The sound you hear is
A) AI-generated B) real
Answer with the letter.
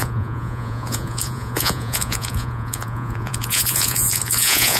A